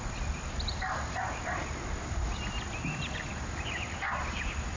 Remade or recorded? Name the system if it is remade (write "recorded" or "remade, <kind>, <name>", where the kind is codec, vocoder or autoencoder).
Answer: recorded